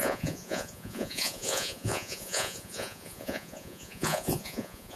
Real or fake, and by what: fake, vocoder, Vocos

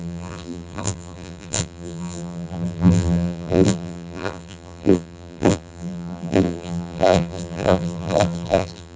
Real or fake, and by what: fake, vocoder, BigVGAN v2